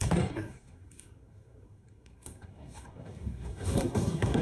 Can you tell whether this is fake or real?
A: fake